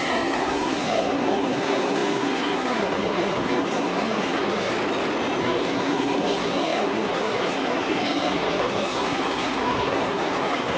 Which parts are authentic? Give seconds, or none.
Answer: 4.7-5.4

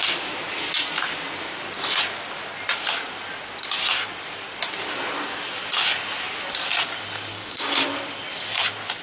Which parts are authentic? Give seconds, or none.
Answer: 0.0-7.3; 7.8-9.0

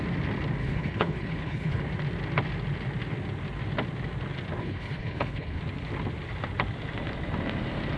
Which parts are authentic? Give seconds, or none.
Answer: 0.0-0.6; 1.8-4.6; 5.6-8.0

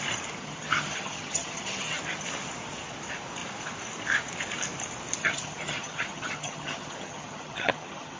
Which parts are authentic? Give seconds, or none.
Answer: 0.0-0.4; 2.0-5.2

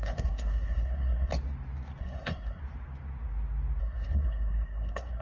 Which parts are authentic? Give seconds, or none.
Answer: 1.3-2.0; 2.6-3.8

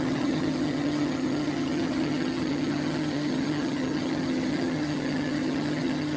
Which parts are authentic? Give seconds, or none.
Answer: none

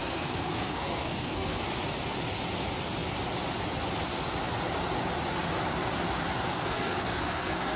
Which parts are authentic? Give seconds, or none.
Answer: 1.6-6.5

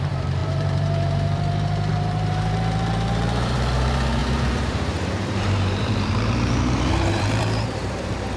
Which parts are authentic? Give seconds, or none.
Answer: none